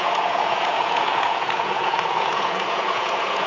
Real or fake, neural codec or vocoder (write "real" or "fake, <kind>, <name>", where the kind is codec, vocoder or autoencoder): fake, vocoder, Vocos